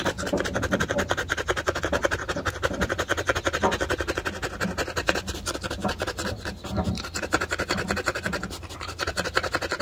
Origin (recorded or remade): recorded